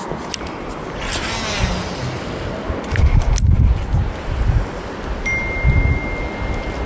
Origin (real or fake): real